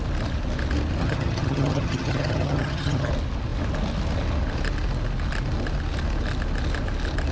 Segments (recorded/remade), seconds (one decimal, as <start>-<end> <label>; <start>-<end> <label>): 0.0-1.0 recorded; 1.0-3.1 remade; 3.1-7.3 recorded